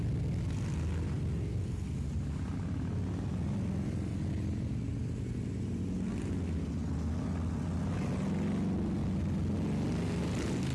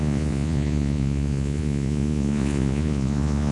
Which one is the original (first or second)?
first